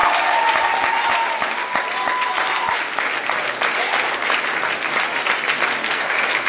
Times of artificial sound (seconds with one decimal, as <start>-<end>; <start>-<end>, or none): 5.8-6.5